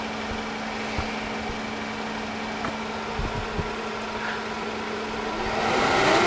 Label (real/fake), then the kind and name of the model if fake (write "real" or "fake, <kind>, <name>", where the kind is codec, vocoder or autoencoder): real